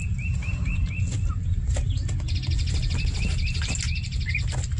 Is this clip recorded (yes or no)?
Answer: yes